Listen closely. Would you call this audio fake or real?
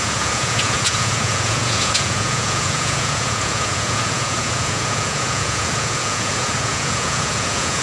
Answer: fake